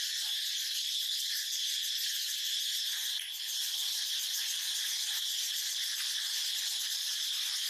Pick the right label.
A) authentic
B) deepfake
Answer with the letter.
A